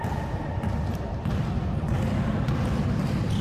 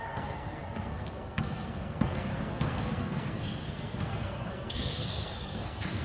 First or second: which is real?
first